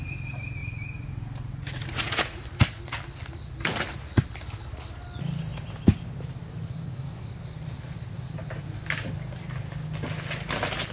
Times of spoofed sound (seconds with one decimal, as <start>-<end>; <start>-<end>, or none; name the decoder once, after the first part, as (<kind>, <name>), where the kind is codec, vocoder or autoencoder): 0.6-2.4 (vocoder, Vocos)